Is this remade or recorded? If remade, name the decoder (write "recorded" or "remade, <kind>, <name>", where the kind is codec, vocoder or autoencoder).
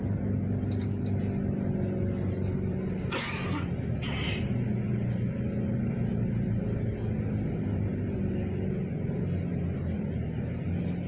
recorded